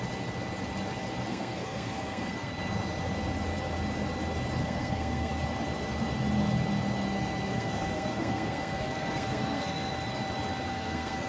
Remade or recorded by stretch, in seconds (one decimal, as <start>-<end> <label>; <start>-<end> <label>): 0.0-1.3 recorded; 1.3-2.5 remade; 2.5-4.6 recorded; 4.6-5.3 remade; 5.3-7.5 recorded; 7.5-9.9 remade; 9.9-10.7 recorded; 10.7-11.3 remade